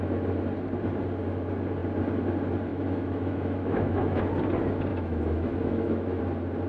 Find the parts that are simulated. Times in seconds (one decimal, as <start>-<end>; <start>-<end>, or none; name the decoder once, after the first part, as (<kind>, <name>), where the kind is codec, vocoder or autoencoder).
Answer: 2.7-4.2 (autoencoder, DAC-VAE); 4.9-6.2